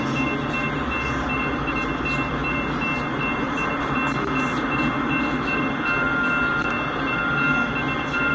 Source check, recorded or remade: recorded